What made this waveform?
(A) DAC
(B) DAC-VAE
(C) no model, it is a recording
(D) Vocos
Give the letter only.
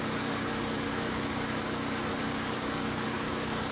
A